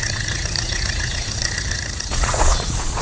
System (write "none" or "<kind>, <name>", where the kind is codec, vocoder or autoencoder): vocoder, Vocos